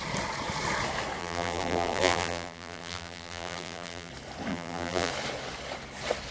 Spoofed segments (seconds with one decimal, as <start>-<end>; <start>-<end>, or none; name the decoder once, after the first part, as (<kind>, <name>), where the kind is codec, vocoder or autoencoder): 1.2-4.1 (vocoder, BigVGAN v2); 4.5-5.1